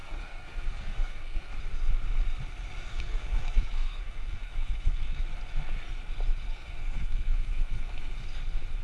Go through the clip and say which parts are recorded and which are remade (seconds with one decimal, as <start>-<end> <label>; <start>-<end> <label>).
0.0-1.5 remade; 1.5-2.9 recorded; 2.9-5.2 remade; 5.2-6.5 recorded; 6.5-7.9 remade; 7.9-8.8 recorded